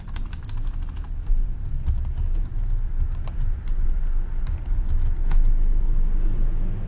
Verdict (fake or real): real